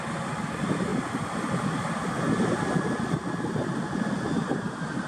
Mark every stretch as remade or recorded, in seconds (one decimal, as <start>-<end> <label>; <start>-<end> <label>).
0.0-5.1 recorded